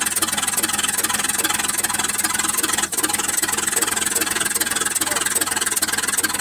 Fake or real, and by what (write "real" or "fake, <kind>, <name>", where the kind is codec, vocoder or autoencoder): real